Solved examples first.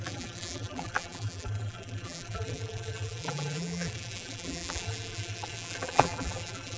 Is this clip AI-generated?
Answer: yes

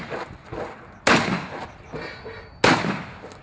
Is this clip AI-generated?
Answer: no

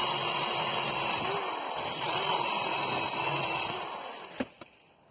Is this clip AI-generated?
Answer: no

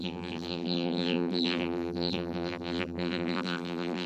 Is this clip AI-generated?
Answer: yes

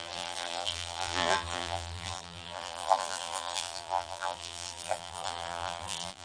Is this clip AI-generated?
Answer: yes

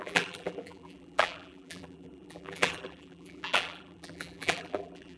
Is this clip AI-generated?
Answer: yes